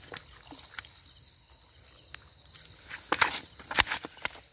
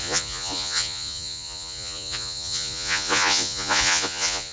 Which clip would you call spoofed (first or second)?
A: second